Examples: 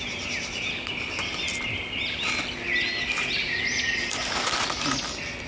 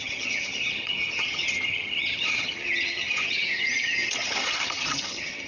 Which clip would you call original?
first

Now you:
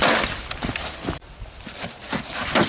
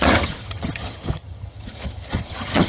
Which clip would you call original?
first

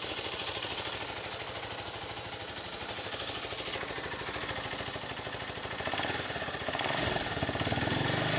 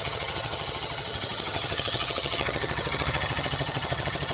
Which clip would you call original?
first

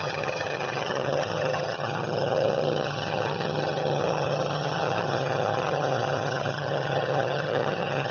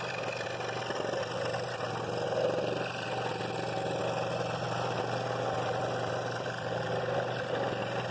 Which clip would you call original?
second